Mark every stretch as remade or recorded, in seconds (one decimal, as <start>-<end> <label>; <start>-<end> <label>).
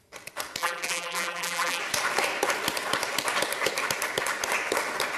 0.0-0.6 recorded; 0.6-1.8 remade; 1.8-5.2 recorded